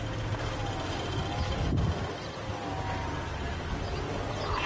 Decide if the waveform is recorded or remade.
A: recorded